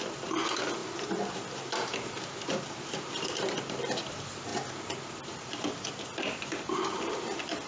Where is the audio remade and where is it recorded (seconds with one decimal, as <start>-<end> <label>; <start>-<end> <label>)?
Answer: 0.0-0.8 remade; 0.8-2.8 recorded; 2.8-4.5 remade; 4.5-5.2 recorded; 5.2-7.7 remade